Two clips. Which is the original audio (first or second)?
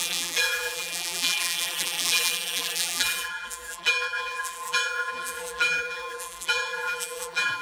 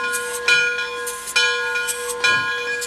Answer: second